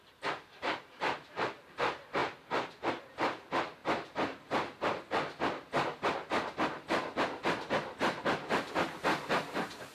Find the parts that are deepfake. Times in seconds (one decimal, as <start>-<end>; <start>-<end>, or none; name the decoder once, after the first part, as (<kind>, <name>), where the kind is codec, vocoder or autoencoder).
0.0-2.2 (vocoder, BigVGAN v2); 2.9-3.8; 8.2-9.9